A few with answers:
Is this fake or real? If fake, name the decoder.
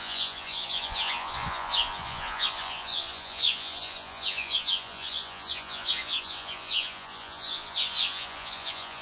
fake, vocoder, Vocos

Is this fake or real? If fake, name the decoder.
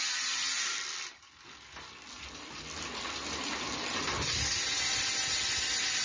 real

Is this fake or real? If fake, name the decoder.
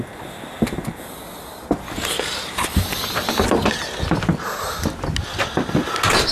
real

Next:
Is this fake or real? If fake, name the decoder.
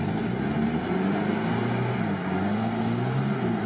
real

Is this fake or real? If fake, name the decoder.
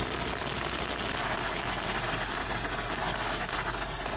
real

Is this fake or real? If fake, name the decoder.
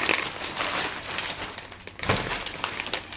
real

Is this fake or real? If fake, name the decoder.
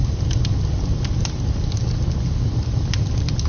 real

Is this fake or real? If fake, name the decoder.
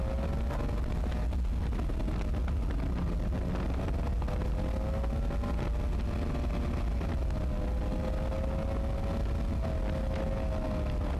real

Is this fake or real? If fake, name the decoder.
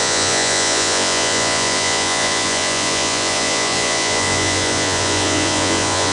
fake, vocoder, Vocos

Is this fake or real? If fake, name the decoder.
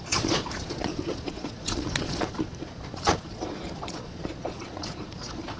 fake, vocoder, Vocos